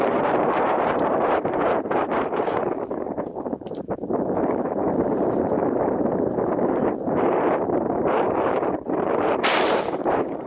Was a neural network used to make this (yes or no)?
yes